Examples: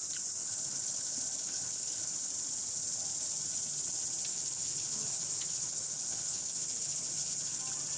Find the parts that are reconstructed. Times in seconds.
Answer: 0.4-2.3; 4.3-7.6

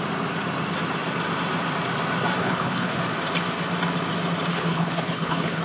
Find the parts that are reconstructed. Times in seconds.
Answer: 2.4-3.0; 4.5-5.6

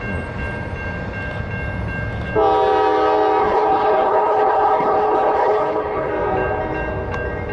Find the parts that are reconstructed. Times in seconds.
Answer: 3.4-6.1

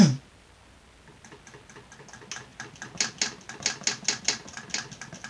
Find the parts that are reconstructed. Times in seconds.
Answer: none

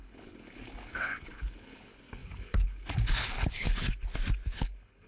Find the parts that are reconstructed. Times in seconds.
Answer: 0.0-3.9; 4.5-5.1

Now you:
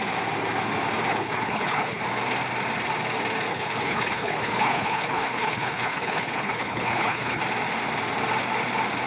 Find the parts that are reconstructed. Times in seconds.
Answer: 1.1-2.0; 3.5-7.4

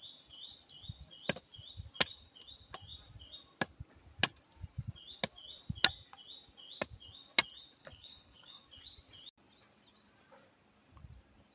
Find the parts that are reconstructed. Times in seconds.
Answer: 7.8-8.6

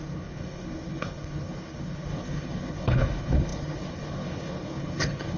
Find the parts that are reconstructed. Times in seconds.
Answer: 0.0-5.4